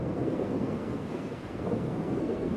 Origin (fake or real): fake